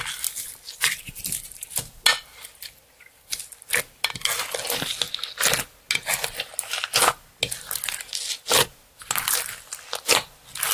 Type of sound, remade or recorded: recorded